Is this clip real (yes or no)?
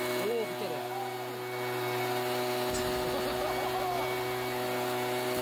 yes